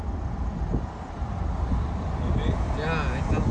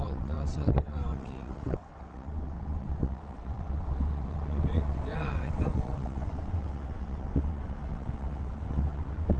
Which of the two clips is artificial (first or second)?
second